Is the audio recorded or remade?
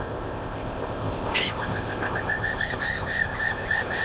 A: remade